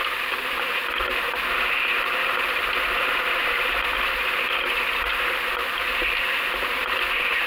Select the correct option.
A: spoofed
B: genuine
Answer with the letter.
A